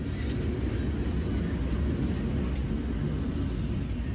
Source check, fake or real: real